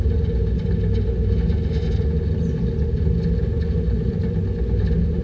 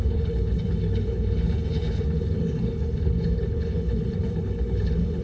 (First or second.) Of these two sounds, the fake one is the second